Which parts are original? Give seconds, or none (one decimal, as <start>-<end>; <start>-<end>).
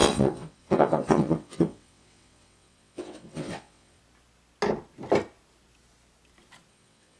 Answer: 4.0-6.7